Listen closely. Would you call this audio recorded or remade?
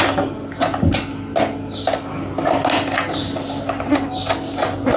recorded